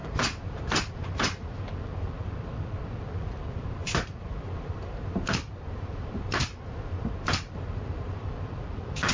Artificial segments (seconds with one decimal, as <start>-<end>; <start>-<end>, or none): 0.0-1.7; 3.8-8.3